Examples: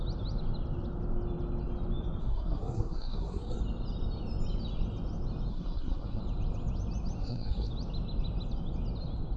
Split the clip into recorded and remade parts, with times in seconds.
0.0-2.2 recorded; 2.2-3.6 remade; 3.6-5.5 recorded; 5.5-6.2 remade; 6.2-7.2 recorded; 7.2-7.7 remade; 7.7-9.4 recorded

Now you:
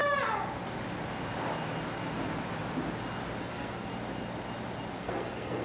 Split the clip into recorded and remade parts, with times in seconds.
0.0-3.4 recorded; 3.4-3.9 remade; 3.9-5.0 recorded; 5.0-5.6 remade

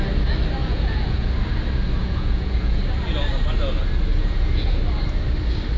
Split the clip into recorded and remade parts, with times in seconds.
0.0-0.6 recorded; 0.6-1.3 remade; 1.3-2.0 recorded; 2.0-2.8 remade; 2.8-4.1 recorded; 4.1-4.8 remade; 4.8-5.8 recorded

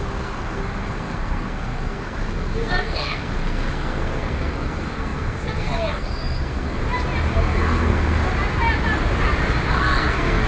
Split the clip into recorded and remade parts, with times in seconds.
0.0-6.8 remade; 6.8-7.3 recorded; 7.3-8.2 remade; 8.2-9.7 recorded; 9.7-10.5 remade

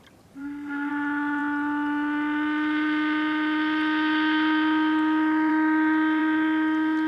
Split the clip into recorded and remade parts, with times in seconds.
0.0-0.4 recorded; 0.4-0.9 remade; 0.9-7.1 recorded

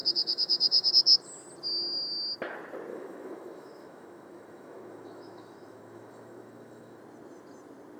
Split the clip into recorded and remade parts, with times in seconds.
0.0-0.9 remade; 0.9-2.9 recorded; 2.9-7.0 remade; 7.0-8.0 recorded